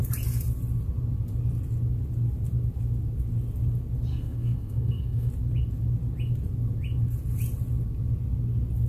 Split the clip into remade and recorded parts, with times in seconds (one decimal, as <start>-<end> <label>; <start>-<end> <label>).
0.0-4.1 recorded; 4.1-5.3 remade; 5.3-8.9 recorded